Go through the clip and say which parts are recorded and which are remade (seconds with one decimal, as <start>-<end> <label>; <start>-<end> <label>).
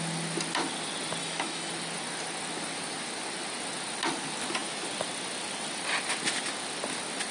0.0-1.2 recorded; 1.2-1.7 remade; 1.7-7.3 recorded